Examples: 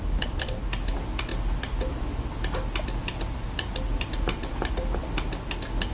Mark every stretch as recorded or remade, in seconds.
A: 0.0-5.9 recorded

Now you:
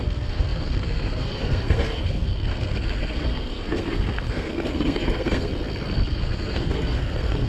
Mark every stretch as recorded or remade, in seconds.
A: 0.0-5.5 remade; 5.5-6.1 recorded; 6.1-7.5 remade